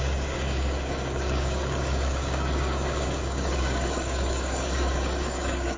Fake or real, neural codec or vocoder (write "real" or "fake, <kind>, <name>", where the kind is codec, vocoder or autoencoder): fake, codec, DAC